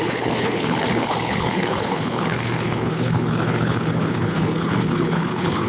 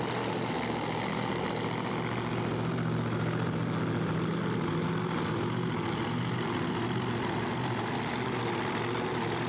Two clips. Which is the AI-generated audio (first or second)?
first